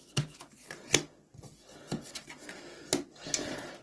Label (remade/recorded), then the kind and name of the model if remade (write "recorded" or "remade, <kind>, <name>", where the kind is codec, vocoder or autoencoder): recorded